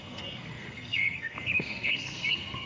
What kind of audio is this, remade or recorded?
remade